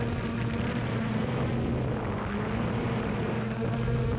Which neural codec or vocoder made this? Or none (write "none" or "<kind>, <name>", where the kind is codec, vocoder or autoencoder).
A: none